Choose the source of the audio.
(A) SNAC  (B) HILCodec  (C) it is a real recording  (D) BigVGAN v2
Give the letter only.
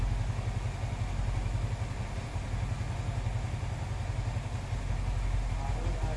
C